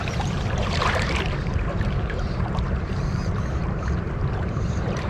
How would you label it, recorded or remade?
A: remade